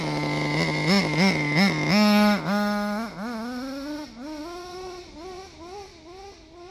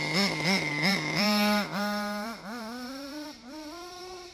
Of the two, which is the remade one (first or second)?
second